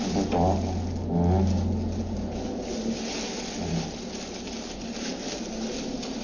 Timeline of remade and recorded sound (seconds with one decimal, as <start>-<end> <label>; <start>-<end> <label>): 0.0-6.2 recorded